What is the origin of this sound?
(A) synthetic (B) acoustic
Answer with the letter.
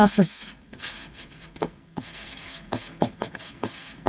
A